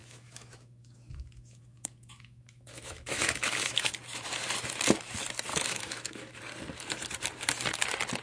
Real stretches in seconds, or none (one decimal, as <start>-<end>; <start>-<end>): 3.9-5.5; 6.4-8.2